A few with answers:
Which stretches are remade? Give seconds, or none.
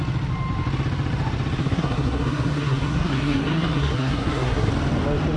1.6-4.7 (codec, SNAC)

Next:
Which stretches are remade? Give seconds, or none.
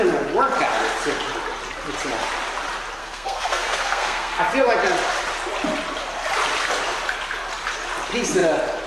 3.0-4.4 (codec, SNAC)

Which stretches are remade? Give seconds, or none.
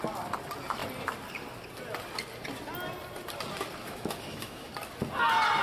3.8-4.7 (autoencoder, DAC-VAE)